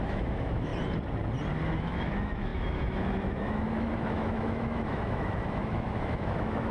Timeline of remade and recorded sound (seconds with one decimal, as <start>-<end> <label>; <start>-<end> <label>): 0.0-0.7 remade; 0.7-1.8 recorded; 1.8-6.7 remade